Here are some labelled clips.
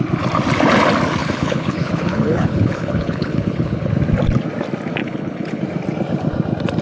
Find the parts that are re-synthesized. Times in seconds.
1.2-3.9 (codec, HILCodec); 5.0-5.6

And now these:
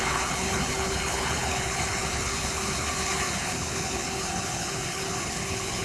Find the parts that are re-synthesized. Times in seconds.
0.0-5.8 (codec, HILCodec)